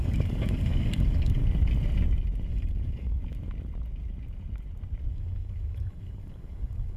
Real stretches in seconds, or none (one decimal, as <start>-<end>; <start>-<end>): 1.4-2.5; 3.2-5.1